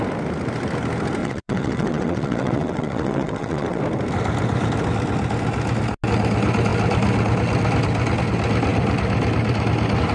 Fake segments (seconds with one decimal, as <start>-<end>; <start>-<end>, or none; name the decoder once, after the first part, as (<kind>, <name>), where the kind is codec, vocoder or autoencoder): 1.2-3.8 (vocoder, WaveNeXt)